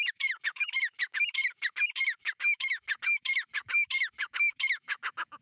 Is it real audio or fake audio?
fake